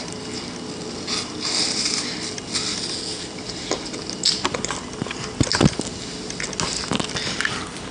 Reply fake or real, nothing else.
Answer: real